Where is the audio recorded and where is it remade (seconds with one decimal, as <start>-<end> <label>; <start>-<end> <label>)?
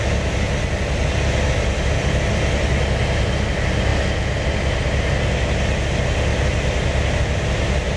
0.0-8.0 recorded